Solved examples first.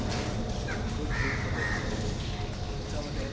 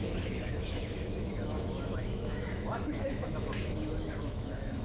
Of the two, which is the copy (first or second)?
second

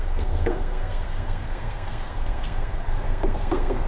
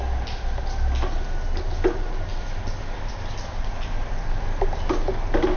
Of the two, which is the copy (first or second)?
first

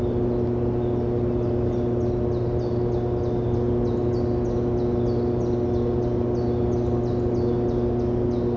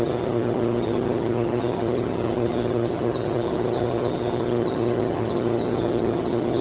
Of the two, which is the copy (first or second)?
second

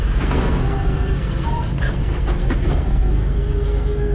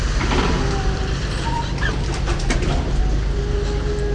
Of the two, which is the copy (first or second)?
first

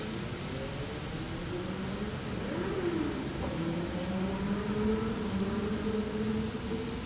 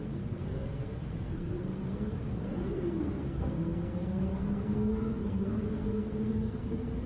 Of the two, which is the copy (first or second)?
second